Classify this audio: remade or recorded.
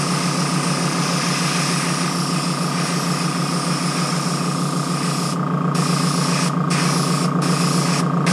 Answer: recorded